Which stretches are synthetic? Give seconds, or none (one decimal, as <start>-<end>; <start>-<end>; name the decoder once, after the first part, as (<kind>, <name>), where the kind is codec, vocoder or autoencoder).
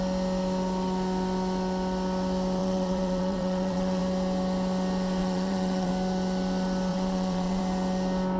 2.6-4.0 (vocoder, WaveNeXt); 5.2-5.9; 6.9-7.6